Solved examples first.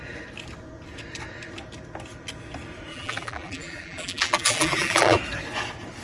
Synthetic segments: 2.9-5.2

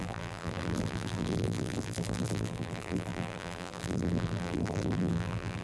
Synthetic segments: 0.0-5.6

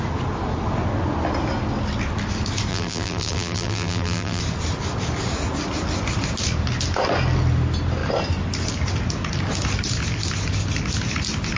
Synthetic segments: 2.7-4.4

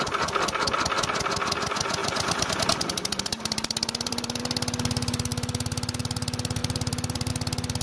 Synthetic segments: 2.0-4.4; 6.6-7.3

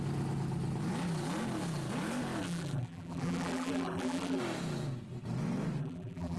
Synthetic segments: 2.4-4.4; 5.8-6.4

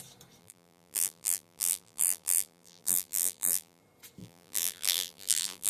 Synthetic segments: 0.4-3.8; 4.2-5.7

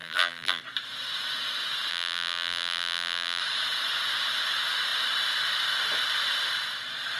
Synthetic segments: 0.0-0.6; 1.9-3.4